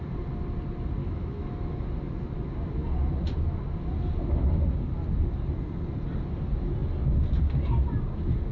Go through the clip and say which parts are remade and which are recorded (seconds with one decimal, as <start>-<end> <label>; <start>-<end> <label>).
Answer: 0.0-1.0 recorded; 1.0-1.8 remade; 1.8-8.5 recorded